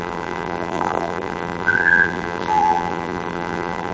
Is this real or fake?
fake